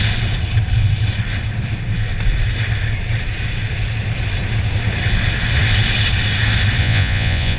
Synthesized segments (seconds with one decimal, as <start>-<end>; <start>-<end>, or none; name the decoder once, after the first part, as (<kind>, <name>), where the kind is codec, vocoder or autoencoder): 6.8-7.6 (vocoder, Vocos)